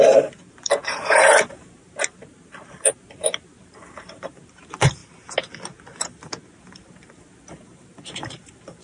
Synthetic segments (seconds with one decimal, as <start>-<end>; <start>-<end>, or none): 0.0-5.0; 6.6-8.8